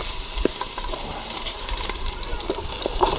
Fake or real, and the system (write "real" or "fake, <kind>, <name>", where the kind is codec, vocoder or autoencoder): fake, vocoder, BigVGAN v2